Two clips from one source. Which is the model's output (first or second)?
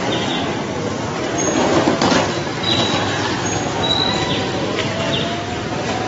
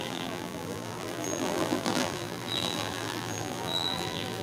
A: second